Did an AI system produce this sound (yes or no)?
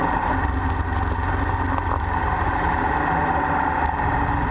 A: no